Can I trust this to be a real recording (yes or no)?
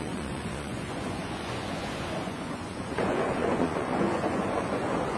no